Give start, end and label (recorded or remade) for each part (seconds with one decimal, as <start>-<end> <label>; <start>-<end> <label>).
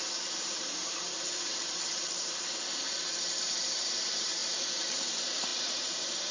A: 0.0-6.3 remade